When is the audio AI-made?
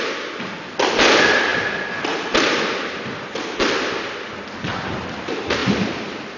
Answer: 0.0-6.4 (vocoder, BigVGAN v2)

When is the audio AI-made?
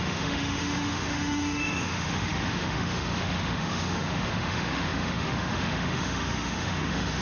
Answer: 0.0-7.2 (autoencoder, DAC-VAE)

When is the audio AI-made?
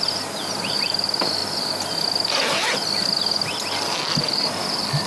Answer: 0.0-1.4 (vocoder, BigVGAN v2); 4.2-5.1